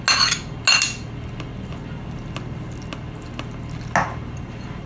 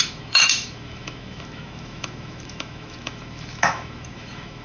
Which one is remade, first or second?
second